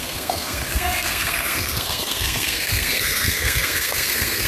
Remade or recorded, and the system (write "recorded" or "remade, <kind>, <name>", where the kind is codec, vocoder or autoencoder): remade, codec, SNAC